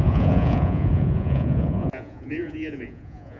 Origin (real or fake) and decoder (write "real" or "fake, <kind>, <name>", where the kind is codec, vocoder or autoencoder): fake, vocoder, Vocos